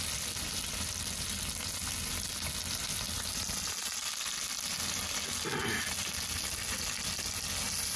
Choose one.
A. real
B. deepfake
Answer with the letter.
A